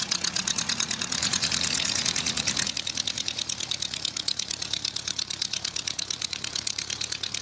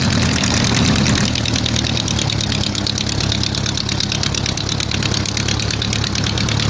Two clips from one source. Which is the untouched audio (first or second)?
second